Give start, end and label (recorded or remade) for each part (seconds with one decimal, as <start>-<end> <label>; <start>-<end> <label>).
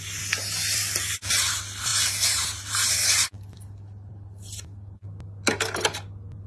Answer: 0.0-1.9 recorded; 1.9-2.9 remade; 2.9-6.5 recorded